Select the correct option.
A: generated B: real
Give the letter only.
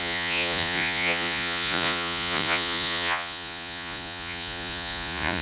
A